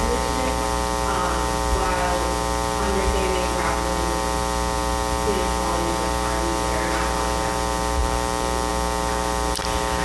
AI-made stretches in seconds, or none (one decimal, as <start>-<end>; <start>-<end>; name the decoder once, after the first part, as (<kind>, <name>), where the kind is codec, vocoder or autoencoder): none